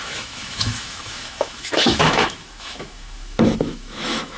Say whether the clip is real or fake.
fake